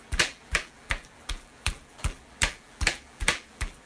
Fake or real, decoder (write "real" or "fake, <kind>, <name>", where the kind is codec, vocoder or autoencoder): fake, vocoder, BigVGAN v2